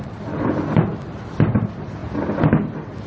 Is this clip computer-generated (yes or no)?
no